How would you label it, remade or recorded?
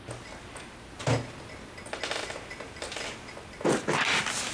recorded